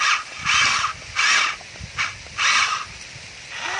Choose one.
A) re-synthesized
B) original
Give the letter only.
B